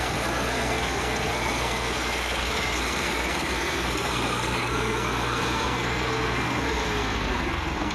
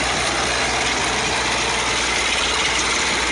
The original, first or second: second